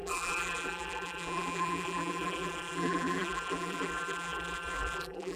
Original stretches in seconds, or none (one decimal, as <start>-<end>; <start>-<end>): none

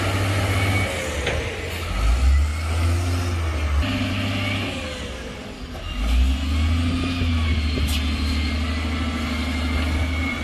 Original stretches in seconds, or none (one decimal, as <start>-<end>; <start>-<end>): 0.0-10.4

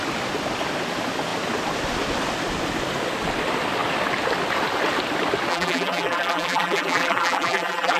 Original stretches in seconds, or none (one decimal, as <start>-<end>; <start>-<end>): 0.0-5.5

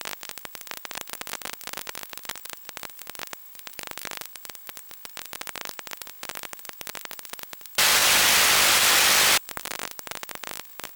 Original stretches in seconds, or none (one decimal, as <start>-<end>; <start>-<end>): 0.0-11.0

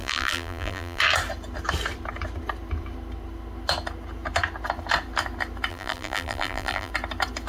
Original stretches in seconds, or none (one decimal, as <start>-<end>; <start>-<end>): 1.0-5.7; 6.9-7.5

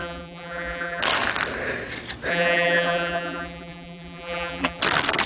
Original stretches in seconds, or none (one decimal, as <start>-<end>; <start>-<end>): 1.0-2.3; 4.8-5.3

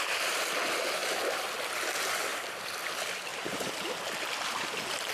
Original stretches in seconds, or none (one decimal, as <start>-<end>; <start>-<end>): 0.0-3.3; 3.9-5.1